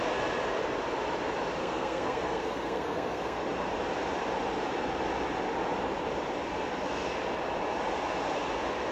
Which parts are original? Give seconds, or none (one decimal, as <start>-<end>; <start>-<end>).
0.0-1.6; 3.4-8.9